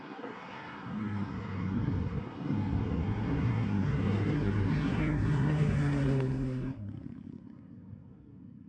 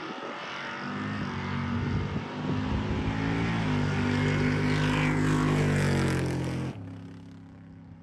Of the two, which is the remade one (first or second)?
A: first